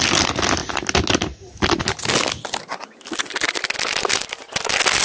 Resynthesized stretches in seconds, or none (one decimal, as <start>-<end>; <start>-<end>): none